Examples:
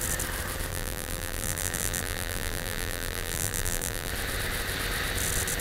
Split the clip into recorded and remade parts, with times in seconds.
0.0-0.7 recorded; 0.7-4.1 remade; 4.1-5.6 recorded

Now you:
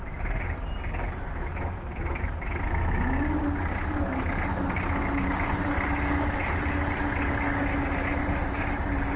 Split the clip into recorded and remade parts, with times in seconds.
0.0-1.5 recorded; 1.5-2.2 remade; 2.2-9.2 recorded

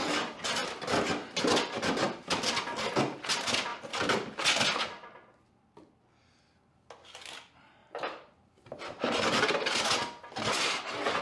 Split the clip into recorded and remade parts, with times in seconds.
0.0-0.6 recorded; 0.6-1.4 remade; 1.4-7.8 recorded; 7.8-9.4 remade; 9.4-11.2 recorded

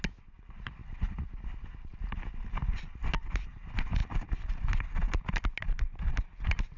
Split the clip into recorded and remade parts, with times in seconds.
0.0-0.8 recorded; 0.8-2.3 remade; 2.3-4.0 recorded; 4.0-5.2 remade; 5.2-6.8 recorded